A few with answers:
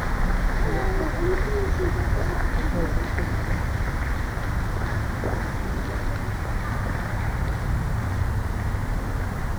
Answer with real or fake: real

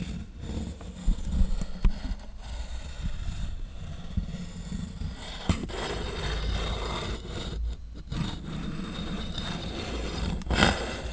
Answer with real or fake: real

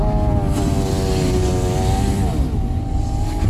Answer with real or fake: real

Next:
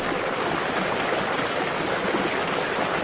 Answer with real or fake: real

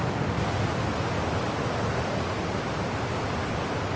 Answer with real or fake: real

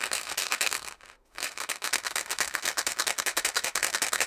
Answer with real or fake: fake